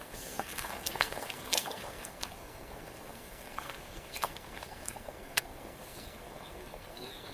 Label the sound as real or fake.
fake